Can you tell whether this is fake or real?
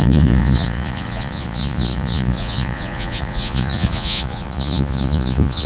fake